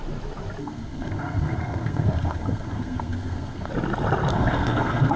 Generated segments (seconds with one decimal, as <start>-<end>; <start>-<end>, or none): 0.6-3.7; 4.3-5.2